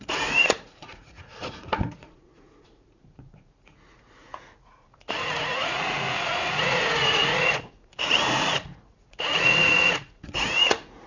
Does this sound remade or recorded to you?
remade